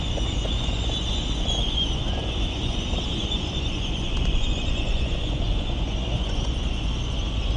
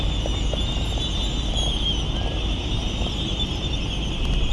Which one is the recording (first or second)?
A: second